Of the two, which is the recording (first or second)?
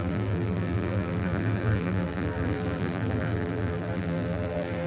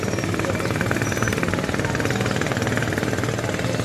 second